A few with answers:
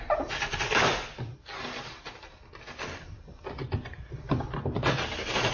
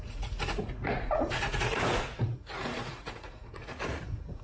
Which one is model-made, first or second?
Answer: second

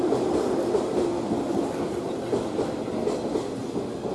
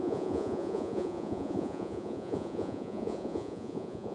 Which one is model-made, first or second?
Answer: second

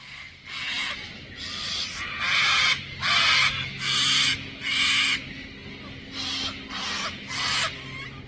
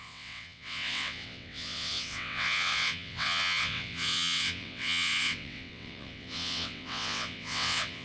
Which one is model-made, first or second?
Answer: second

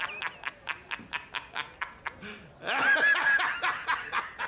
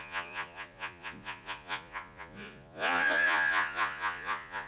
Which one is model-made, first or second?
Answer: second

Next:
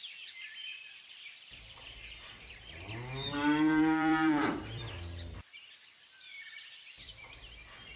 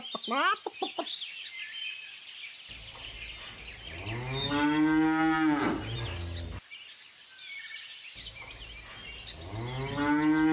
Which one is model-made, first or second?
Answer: first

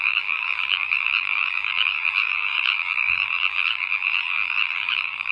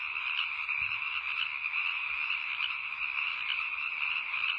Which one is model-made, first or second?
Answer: first